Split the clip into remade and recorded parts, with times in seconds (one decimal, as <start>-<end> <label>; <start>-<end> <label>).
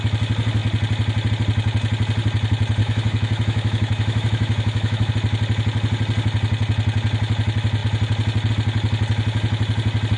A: 0.0-2.8 recorded; 2.8-5.1 remade; 5.1-10.2 recorded